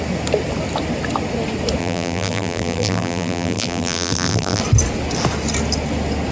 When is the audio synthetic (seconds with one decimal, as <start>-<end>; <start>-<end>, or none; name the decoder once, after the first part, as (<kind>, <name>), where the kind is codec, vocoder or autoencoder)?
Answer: 1.8-4.6 (vocoder, BigVGAN v2)